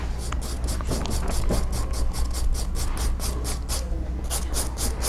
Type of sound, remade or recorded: recorded